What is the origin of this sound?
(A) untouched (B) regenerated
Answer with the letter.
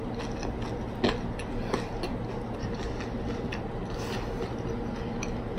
A